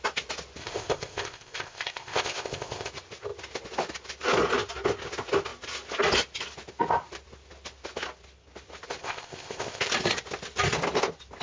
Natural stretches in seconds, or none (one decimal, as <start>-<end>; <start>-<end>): 0.0-0.6; 2.9-9.0; 9.8-11.4